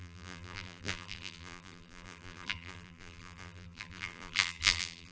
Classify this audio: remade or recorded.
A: remade